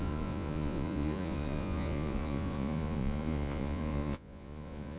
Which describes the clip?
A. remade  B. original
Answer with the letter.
A